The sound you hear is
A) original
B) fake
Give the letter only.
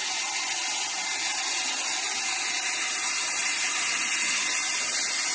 A